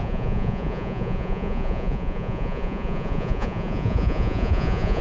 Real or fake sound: fake